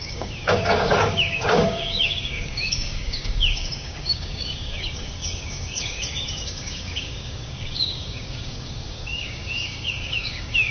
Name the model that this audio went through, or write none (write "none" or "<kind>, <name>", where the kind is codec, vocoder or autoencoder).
codec, DAC